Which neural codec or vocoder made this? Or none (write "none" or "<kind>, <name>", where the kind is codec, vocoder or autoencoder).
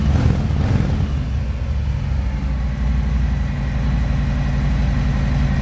none